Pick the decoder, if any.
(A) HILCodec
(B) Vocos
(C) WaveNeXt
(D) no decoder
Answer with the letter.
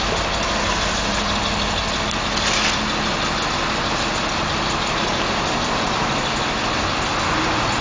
D